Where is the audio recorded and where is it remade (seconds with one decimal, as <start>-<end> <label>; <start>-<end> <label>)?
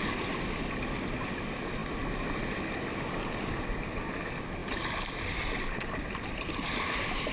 0.0-7.3 recorded